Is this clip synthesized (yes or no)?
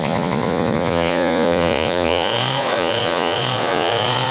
yes